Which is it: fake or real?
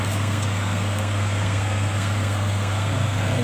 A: fake